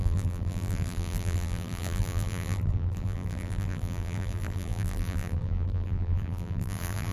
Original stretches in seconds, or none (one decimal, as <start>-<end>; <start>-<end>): none